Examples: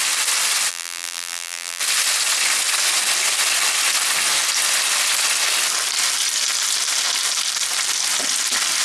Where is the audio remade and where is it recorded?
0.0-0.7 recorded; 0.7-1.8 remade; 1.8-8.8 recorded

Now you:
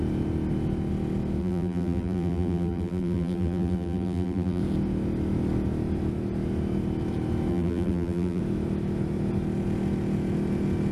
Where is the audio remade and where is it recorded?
0.0-1.4 recorded; 1.4-4.6 remade; 4.6-7.5 recorded; 7.5-8.4 remade; 8.4-10.9 recorded

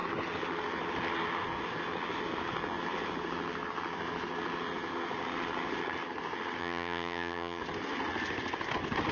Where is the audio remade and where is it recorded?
0.0-6.6 recorded; 6.6-7.6 remade; 7.6-9.1 recorded

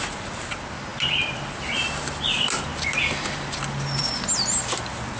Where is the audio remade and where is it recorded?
0.0-5.2 recorded

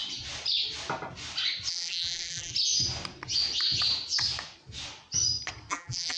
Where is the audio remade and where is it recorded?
0.0-1.7 recorded; 1.7-2.5 remade; 2.5-5.7 recorded; 5.7-6.2 remade

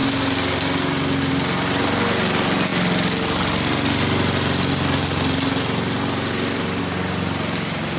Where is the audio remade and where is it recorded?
0.0-8.0 recorded

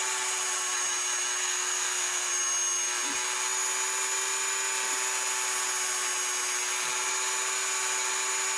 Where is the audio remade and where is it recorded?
0.0-1.4 recorded; 1.4-2.3 remade; 2.3-8.6 recorded